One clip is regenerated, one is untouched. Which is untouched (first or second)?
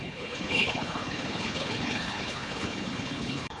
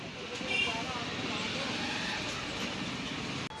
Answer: second